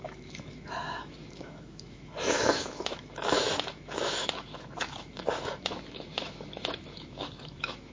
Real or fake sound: fake